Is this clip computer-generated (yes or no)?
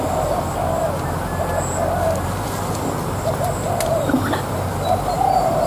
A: no